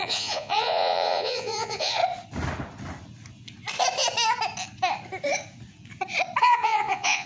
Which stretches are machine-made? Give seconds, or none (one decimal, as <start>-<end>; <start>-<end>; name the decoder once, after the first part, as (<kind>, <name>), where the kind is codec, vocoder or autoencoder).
0.0-2.0 (vocoder, Vocos); 6.4-7.3